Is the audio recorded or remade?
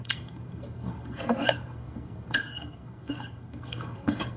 remade